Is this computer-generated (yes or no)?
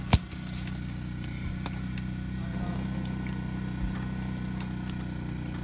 no